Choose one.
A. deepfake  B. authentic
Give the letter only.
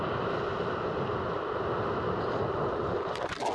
B